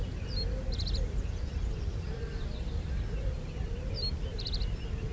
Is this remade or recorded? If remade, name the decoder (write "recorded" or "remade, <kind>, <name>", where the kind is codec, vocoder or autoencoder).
recorded